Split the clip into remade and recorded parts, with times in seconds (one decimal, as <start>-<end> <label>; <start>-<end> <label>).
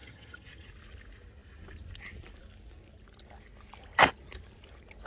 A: 0.0-0.7 remade; 0.7-5.1 recorded